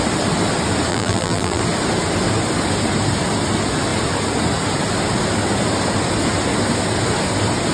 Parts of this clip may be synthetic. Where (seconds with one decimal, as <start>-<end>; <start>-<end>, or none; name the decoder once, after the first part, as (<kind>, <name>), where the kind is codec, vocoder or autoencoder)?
0.9-1.6 (vocoder, BigVGAN v2)